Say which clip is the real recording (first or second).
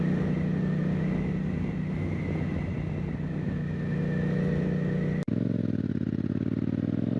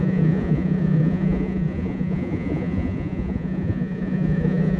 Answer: first